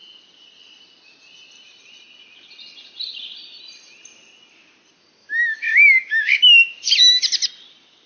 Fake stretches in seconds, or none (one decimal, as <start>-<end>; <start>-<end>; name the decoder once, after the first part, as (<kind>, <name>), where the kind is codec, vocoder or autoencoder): 5.2-6.9 (autoencoder, DAC-VAE)